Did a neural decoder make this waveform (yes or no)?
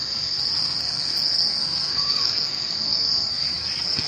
yes